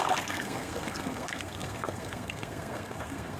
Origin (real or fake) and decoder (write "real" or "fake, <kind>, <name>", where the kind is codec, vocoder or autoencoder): fake, codec, SNAC